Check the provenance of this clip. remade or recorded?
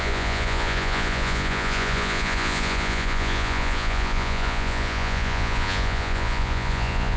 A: remade